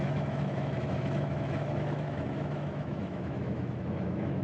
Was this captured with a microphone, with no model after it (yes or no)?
no